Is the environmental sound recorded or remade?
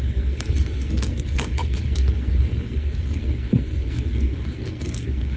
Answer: remade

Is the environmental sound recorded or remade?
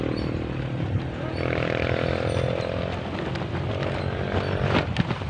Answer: recorded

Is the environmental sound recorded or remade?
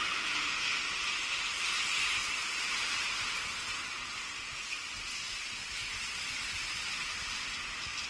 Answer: recorded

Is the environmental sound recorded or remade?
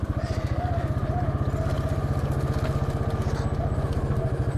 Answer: recorded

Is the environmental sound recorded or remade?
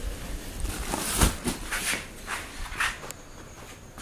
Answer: recorded